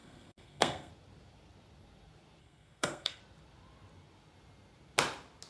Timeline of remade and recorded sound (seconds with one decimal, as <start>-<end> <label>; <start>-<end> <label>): 0.0-0.9 remade; 0.9-2.4 recorded; 2.4-3.2 remade; 3.2-5.5 recorded